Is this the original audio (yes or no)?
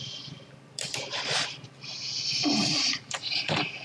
no